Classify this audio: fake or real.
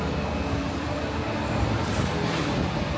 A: real